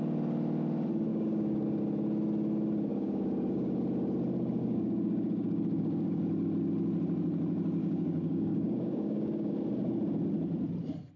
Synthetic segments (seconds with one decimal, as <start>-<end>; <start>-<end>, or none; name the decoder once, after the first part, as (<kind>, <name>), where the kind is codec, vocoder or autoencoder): 1.1-1.8 (codec, DAC); 2.9-3.8; 4.6-6.2; 7.8-9.5